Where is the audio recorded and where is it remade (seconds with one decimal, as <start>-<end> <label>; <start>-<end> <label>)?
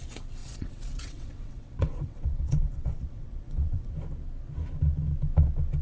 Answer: 0.0-0.4 recorded; 0.4-3.9 remade; 3.9-5.8 recorded